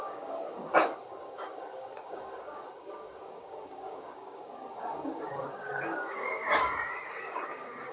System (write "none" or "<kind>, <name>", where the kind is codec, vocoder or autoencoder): codec, DAC